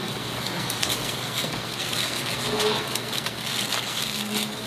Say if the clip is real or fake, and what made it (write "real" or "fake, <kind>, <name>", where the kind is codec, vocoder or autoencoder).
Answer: fake, codec, SNAC